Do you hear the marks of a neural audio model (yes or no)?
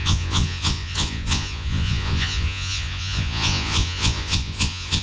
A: yes